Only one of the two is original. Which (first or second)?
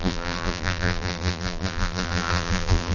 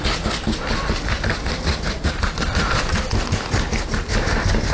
second